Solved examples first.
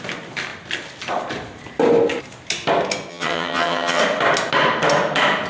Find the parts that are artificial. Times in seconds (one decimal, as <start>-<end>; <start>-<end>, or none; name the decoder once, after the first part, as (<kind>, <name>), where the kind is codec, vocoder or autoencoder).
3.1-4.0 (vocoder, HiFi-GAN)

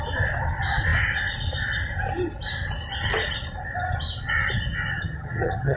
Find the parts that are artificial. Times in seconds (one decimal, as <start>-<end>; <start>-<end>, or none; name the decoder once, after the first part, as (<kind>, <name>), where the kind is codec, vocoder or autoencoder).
4.9-5.8 (vocoder, HiFi-GAN)

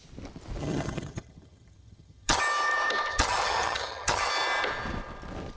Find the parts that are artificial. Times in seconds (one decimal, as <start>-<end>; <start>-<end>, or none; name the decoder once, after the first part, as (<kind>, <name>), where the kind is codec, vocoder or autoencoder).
0.6-2.4 (vocoder, HiFi-GAN); 3.1-4.3

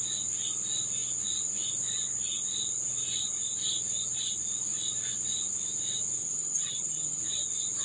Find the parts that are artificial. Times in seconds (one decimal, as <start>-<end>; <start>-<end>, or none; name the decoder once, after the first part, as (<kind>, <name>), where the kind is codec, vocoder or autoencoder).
6.2-7.2 (vocoder, HiFi-GAN)

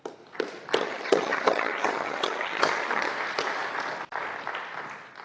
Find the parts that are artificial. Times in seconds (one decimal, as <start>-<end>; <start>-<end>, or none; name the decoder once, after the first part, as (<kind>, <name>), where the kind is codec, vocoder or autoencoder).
0.8-3.1 (vocoder, HiFi-GAN)

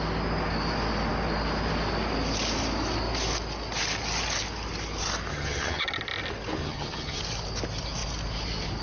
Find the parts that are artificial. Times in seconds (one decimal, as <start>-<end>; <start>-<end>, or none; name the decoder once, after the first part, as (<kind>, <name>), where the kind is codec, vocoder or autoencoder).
5.3-5.8 (vocoder, HiFi-GAN); 6.6-7.2

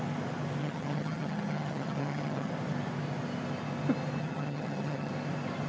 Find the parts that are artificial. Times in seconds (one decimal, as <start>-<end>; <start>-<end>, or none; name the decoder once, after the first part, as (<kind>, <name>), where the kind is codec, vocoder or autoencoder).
0.6-2.5 (vocoder, HiFi-GAN); 4.2-5.1